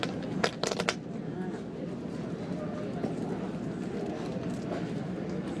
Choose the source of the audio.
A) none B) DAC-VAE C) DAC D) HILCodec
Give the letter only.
A